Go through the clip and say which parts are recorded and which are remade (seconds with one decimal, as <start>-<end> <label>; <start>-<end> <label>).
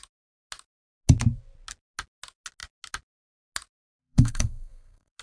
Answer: 0.0-4.0 recorded; 4.0-5.2 remade